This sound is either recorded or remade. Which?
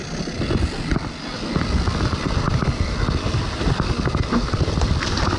recorded